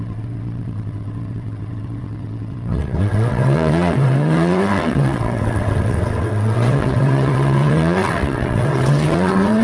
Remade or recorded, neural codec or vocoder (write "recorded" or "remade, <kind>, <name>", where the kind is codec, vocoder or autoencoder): remade, vocoder, WaveNeXt